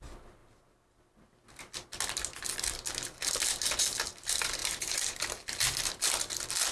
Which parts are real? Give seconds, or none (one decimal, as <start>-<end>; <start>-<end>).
0.0-4.6; 5.2-6.7